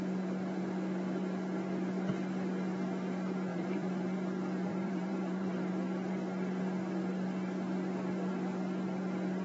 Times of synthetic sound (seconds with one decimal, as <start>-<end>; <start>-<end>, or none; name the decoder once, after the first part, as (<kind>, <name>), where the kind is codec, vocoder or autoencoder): 3.5-4.0 (vocoder, BigVGAN v2); 4.7-5.7